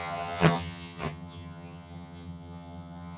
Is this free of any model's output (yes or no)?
no